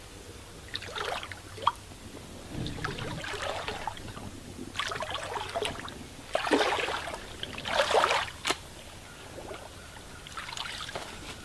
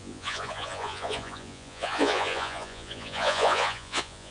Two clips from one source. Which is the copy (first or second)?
second